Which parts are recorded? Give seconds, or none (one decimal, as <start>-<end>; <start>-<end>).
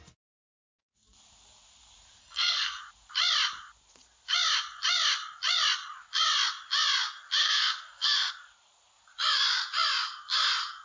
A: 0.0-2.2; 2.8-7.4; 8.3-10.8